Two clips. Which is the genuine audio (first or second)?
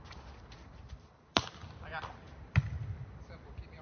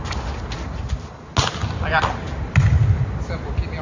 second